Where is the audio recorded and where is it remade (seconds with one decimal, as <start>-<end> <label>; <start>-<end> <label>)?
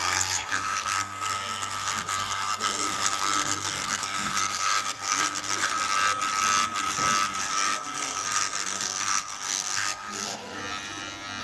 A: 0.0-5.7 remade; 5.7-7.5 recorded; 7.5-10.6 remade; 10.6-11.4 recorded